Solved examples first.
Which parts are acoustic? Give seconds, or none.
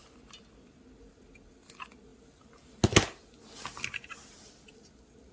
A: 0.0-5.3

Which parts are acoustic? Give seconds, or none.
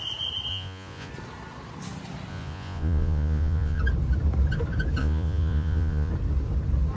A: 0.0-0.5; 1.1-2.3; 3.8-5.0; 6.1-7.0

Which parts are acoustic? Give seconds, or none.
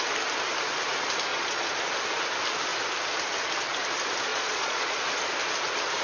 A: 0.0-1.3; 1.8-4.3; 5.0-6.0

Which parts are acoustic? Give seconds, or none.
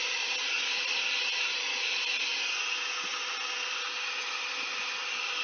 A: 0.0-5.4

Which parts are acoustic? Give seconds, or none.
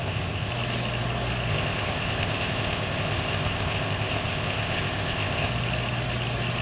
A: 0.5-1.5; 5.5-6.6